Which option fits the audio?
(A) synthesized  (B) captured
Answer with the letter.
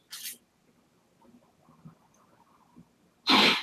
B